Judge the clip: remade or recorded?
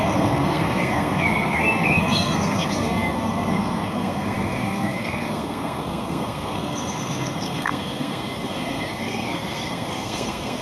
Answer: remade